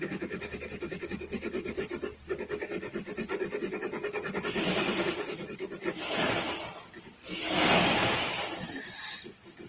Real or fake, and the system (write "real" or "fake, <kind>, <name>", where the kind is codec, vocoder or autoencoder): real